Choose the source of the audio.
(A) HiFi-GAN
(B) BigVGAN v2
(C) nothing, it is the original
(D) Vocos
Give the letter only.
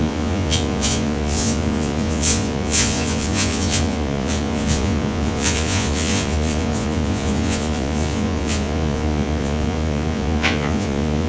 D